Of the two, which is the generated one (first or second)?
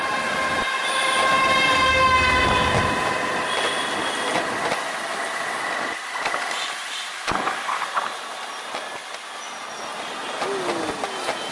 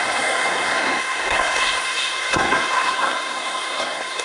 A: second